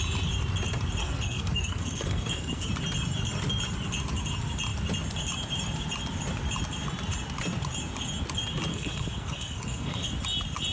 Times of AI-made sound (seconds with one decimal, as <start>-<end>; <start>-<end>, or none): 1.0-2.7; 8.7-10.1